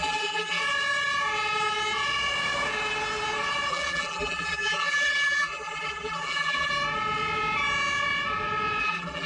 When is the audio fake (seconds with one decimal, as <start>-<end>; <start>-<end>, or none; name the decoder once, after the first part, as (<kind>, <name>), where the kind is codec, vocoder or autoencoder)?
0.0-0.6 (vocoder, BigVGAN v2); 3.7-6.7; 8.8-9.3